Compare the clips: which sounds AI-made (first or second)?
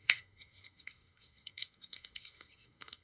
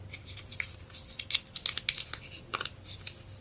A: first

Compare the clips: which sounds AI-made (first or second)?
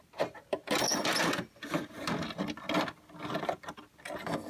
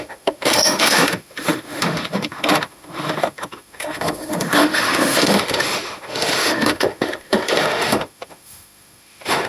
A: second